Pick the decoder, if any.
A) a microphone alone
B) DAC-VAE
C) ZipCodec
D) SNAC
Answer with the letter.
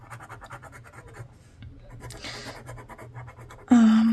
A